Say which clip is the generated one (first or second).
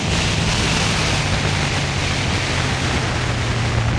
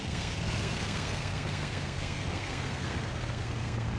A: second